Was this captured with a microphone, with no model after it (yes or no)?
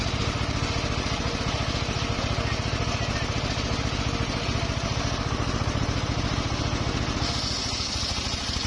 yes